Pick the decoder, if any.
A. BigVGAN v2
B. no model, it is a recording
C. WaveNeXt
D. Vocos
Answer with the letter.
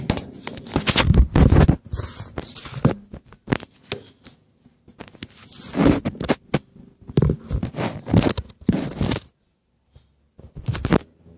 B